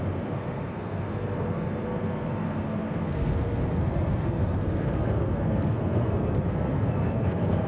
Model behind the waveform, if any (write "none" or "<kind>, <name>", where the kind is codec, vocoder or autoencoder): codec, SNAC